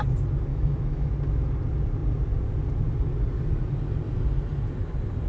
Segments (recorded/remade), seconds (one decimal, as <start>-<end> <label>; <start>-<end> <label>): 0.0-0.5 recorded; 0.5-1.1 remade; 1.1-5.3 recorded